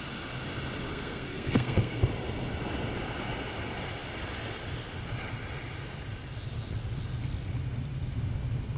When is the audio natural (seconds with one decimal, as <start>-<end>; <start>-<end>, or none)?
0.0-0.9; 2.0-8.8